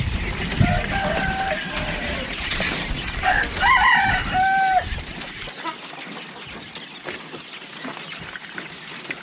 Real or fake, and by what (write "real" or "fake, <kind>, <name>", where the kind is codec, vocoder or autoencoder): real